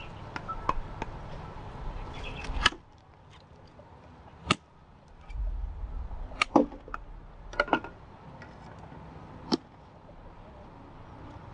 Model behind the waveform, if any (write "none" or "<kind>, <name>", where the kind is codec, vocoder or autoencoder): none